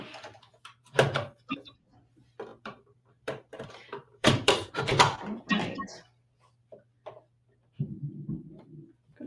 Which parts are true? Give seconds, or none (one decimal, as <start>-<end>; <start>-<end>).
0.0-2.5; 4.7-9.3